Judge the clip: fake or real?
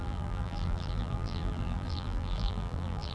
fake